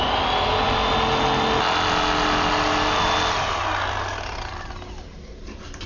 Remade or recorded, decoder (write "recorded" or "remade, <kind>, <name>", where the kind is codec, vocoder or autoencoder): recorded